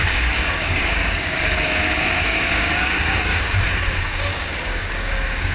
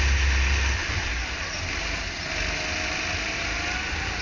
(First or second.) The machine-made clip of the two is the first